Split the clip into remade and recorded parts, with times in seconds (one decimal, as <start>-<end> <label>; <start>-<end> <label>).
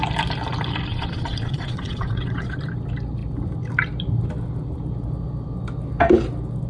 0.0-0.9 recorded; 0.9-2.6 remade; 2.6-6.7 recorded